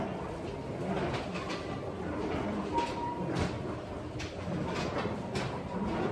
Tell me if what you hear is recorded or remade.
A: recorded